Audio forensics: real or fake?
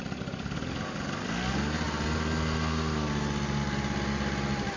real